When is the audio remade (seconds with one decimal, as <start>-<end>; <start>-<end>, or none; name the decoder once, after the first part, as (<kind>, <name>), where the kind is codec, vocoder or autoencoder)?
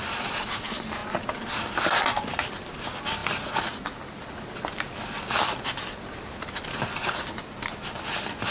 none